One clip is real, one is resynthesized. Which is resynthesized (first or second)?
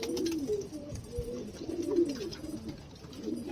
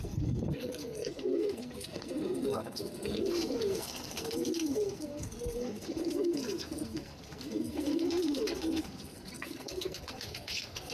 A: second